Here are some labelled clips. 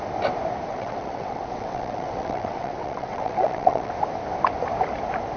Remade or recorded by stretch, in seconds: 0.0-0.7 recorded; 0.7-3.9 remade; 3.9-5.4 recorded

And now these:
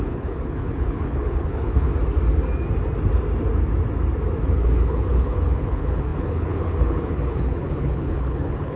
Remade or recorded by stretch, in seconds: 0.0-1.9 remade; 1.9-4.4 recorded; 4.4-8.8 remade

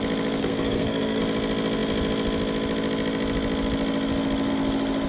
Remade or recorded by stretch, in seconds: 0.0-0.4 recorded; 0.4-1.2 remade; 1.2-5.1 recorded

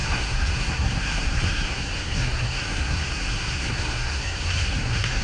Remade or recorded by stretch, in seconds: 0.0-5.2 remade

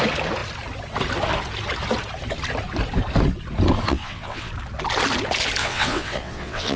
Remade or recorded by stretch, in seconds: 0.0-3.9 recorded; 3.9-4.5 remade; 4.5-5.6 recorded; 5.6-6.8 remade

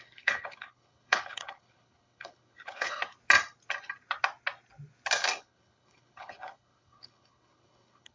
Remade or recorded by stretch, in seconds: 0.0-3.0 remade; 3.0-5.4 recorded; 5.4-8.1 remade

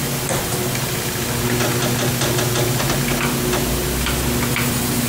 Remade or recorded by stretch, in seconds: 0.0-5.1 recorded